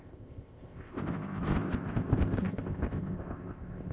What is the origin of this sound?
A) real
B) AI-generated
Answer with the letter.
B